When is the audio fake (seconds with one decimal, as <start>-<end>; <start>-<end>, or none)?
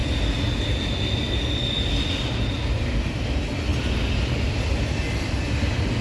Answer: none